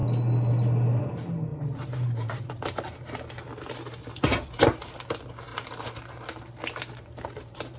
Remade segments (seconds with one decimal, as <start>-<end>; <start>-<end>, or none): 5.5-7.8